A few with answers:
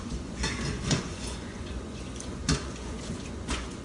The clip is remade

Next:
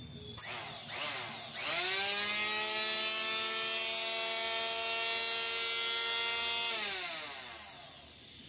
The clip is recorded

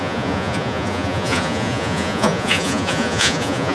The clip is remade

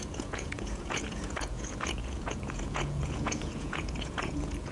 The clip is remade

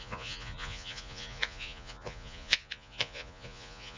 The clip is remade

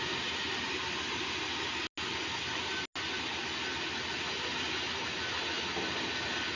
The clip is recorded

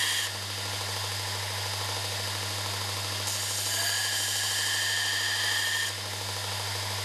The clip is recorded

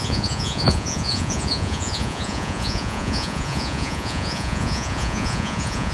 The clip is remade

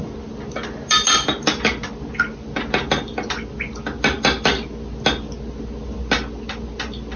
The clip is recorded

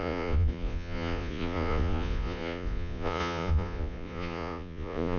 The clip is remade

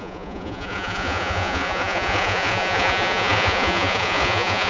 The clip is remade